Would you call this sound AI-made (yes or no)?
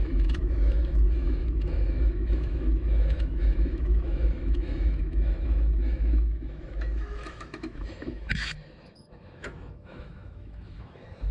yes